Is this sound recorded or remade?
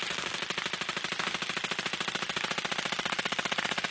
recorded